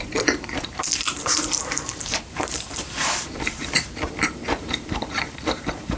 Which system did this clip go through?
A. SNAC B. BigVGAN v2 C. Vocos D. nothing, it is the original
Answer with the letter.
B